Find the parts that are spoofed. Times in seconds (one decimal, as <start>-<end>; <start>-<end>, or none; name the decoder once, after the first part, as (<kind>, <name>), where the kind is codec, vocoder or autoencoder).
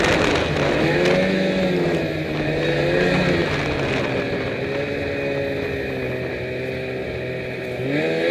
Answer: none